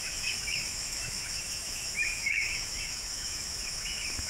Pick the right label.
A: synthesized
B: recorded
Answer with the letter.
A